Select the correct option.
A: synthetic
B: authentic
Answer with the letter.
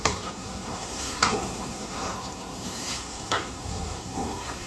A